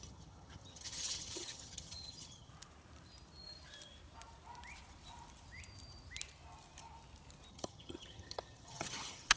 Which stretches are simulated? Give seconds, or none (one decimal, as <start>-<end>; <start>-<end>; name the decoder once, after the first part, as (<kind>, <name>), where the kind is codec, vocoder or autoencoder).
0.0-2.5 (vocoder, HiFi-GAN); 7.5-9.4